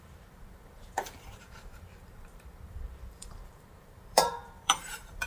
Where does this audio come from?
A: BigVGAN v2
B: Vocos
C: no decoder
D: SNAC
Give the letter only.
A